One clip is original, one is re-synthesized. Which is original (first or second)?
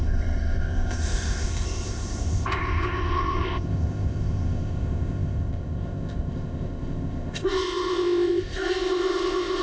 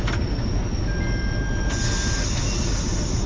second